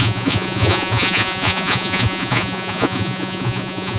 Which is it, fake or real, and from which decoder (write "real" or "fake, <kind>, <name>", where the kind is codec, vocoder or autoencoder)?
fake, vocoder, Vocos